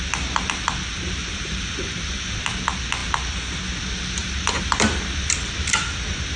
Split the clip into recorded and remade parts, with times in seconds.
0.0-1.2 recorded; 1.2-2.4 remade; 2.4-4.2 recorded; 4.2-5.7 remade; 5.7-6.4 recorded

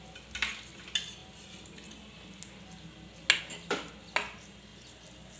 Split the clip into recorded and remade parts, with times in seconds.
0.0-5.4 recorded

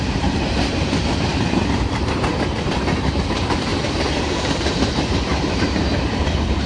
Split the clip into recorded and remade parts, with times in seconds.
0.0-3.7 remade; 3.7-4.2 recorded; 4.2-6.7 remade

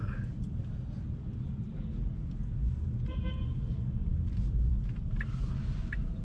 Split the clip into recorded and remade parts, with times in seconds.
0.0-6.2 recorded

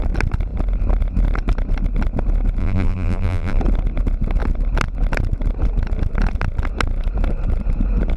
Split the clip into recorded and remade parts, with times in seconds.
0.0-2.6 recorded; 2.6-3.6 remade; 3.6-8.2 recorded

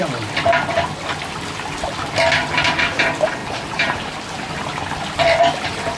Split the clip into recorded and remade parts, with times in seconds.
0.0-3.4 recorded; 3.4-4.1 remade; 4.1-6.0 recorded

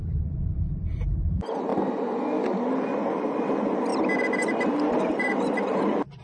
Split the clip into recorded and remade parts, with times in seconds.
0.0-1.7 remade; 1.7-2.7 recorded; 2.7-3.9 remade; 3.9-4.7 recorded; 4.7-6.2 remade